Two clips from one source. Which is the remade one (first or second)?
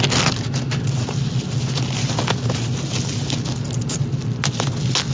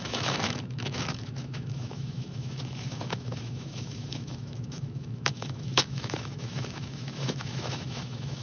second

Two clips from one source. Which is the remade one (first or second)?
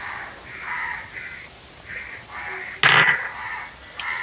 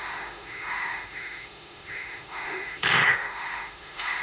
second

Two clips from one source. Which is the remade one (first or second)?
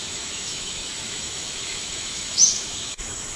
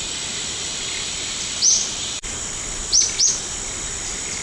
first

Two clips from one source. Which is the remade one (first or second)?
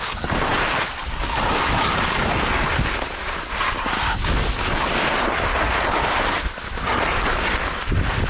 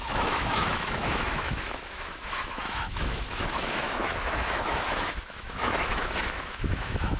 second